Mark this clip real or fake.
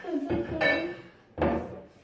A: real